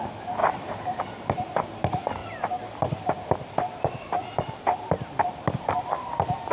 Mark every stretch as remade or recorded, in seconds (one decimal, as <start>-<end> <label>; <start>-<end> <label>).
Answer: 0.0-6.5 recorded